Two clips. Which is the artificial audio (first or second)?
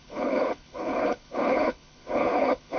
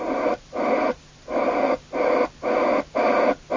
first